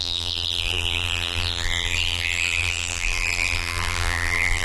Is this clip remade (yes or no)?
yes